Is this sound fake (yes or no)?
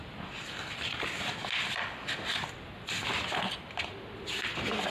no